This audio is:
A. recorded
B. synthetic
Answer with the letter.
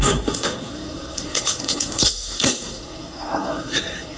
B